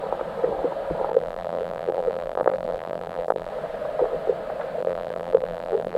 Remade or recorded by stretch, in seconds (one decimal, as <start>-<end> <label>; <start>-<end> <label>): 0.0-1.1 recorded; 1.1-3.5 remade; 3.5-4.8 recorded; 4.8-6.0 remade